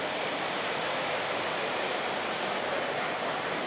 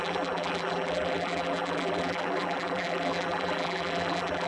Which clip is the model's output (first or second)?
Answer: second